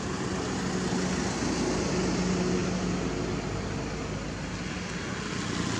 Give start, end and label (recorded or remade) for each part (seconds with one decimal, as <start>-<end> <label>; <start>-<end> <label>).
0.0-5.8 recorded